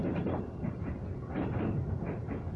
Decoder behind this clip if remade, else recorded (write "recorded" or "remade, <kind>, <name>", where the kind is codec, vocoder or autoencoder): remade, vocoder, BigVGAN v2